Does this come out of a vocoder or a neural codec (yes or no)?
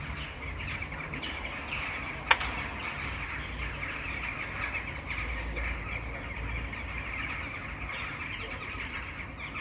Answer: no